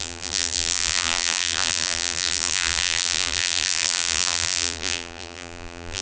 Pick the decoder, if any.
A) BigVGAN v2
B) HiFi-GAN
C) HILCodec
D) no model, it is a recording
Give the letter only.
A